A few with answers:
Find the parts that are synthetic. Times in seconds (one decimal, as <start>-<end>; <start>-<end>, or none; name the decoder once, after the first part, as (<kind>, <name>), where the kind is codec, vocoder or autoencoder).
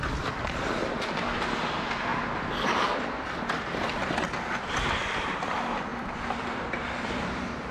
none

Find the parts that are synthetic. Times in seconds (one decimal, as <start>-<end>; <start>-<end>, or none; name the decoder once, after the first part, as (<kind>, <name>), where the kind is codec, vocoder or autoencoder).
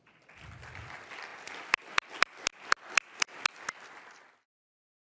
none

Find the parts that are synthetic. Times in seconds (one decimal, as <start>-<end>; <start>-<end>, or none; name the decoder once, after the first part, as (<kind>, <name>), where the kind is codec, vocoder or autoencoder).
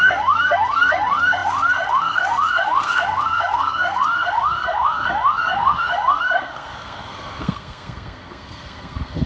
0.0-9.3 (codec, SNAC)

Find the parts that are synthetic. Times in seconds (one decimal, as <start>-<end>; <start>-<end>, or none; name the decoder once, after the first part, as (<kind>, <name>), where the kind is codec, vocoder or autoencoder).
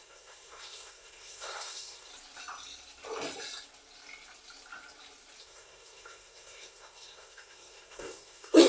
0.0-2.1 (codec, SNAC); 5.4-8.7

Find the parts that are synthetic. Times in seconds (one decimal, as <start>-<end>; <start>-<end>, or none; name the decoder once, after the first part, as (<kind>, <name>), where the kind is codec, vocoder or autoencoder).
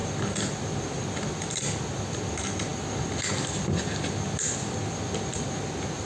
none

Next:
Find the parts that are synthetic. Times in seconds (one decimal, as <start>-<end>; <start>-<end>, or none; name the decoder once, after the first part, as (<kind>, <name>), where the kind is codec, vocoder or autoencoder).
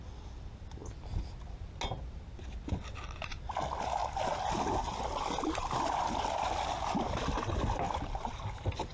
none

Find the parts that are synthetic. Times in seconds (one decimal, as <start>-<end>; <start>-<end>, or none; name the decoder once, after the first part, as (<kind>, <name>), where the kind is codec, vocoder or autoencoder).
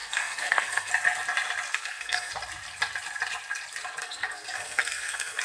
0.0-0.9 (codec, SNAC); 1.7-2.3; 4.0-5.4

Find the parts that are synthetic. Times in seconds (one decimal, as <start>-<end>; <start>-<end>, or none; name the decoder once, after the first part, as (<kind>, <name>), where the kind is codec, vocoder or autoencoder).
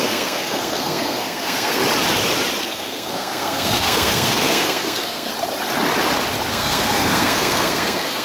0.0-1.8 (codec, SNAC); 2.6-5.3; 6.5-8.2